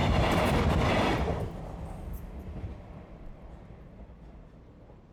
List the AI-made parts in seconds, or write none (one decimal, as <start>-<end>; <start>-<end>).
none